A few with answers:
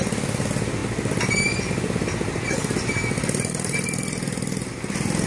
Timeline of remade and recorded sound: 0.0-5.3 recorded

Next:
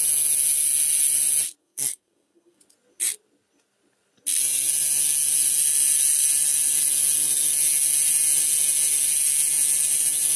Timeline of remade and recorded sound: 0.0-1.6 recorded; 1.6-2.6 remade; 2.6-10.4 recorded

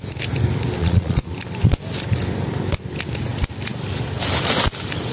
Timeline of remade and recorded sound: 0.0-0.8 recorded; 0.8-1.3 remade; 1.3-5.1 recorded

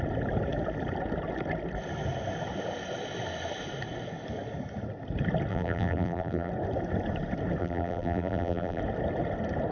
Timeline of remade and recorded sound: 0.0-5.5 recorded; 5.5-6.5 remade; 6.5-7.6 recorded; 7.6-8.8 remade; 8.8-9.7 recorded

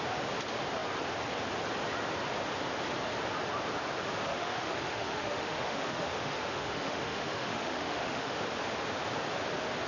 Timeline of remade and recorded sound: 0.0-4.3 recorded; 4.3-8.4 remade; 8.4-9.9 recorded

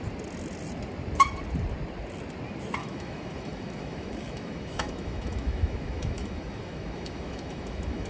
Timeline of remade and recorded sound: 0.0-2.8 recorded; 2.8-8.1 remade

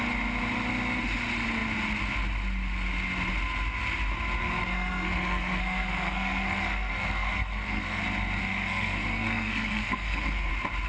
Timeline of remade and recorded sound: 0.0-4.4 recorded; 4.4-8.0 remade; 8.0-8.4 recorded; 8.4-10.5 remade; 10.5-10.9 recorded

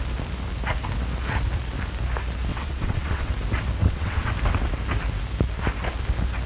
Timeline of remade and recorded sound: 0.0-2.5 recorded; 2.5-3.3 remade; 3.3-3.8 recorded; 3.8-4.3 remade; 4.3-6.5 recorded